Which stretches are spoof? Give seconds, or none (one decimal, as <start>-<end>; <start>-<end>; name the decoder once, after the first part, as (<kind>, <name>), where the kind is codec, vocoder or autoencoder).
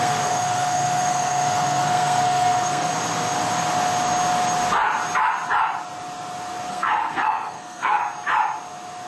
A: 0.0-2.9 (codec, SNAC); 6.7-8.0